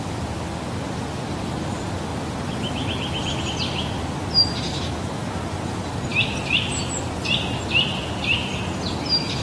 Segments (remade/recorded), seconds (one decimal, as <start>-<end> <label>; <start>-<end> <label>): 0.0-4.7 recorded; 4.7-5.3 remade; 5.3-9.4 recorded